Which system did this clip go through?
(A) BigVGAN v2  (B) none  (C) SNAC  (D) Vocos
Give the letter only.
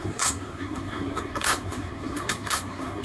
C